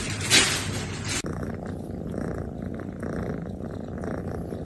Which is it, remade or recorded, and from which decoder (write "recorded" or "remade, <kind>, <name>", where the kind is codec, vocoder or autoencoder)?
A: recorded